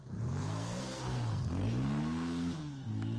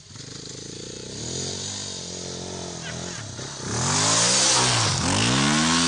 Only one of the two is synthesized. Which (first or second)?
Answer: first